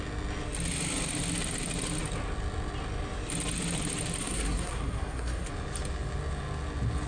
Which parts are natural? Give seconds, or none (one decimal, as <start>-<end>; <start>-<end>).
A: 0.0-4.2; 5.5-7.1